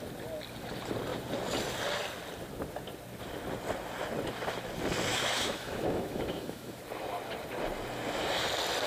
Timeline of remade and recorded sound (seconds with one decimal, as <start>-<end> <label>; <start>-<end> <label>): 0.0-5.1 recorded; 5.1-6.8 remade; 6.8-8.9 recorded